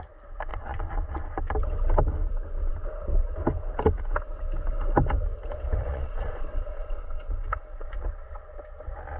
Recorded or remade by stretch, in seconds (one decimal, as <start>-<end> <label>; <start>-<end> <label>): 0.0-0.5 recorded; 0.5-1.3 remade; 1.3-5.9 recorded; 5.9-8.6 remade; 8.6-9.2 recorded